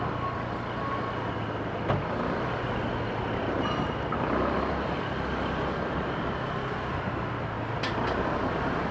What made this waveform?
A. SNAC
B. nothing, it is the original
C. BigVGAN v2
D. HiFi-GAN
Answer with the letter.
B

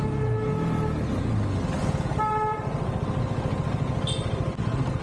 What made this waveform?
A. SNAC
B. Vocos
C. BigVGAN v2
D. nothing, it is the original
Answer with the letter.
D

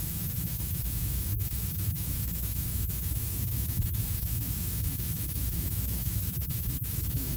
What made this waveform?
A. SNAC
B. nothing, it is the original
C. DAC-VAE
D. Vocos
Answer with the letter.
C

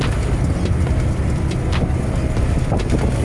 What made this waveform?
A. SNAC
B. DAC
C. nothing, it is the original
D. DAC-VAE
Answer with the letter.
C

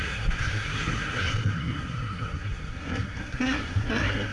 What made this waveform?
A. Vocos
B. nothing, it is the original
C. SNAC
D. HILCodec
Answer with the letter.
C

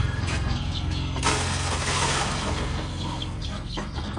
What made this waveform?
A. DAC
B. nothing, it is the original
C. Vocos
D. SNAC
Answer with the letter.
D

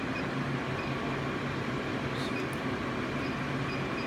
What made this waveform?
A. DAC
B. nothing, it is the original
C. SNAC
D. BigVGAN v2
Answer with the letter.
B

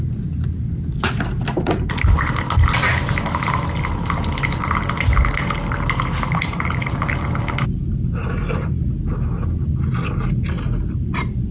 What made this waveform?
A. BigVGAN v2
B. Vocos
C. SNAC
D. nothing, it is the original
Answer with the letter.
D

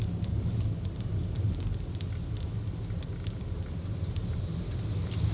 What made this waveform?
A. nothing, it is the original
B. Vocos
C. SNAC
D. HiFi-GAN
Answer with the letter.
A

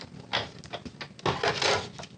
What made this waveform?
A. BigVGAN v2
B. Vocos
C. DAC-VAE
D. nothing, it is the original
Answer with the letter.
D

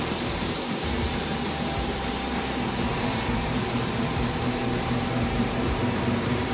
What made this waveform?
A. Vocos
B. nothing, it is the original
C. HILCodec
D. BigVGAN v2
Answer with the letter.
D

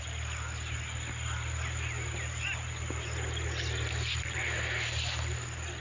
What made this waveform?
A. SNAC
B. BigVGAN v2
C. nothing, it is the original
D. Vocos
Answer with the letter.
C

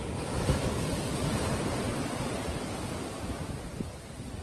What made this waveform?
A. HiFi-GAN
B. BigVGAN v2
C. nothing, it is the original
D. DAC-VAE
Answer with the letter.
C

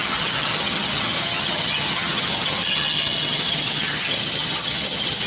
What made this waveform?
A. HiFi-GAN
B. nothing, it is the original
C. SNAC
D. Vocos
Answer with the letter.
A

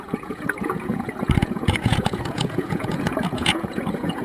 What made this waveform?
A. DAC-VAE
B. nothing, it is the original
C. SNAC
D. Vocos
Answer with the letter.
D